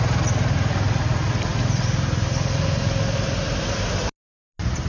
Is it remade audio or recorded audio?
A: recorded